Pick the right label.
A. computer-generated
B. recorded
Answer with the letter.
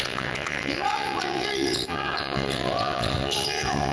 A